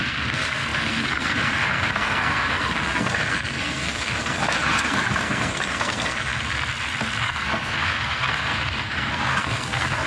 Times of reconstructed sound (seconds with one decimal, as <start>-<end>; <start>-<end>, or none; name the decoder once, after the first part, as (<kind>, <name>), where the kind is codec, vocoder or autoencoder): 0.0-6.3 (codec, SNAC); 7.2-10.1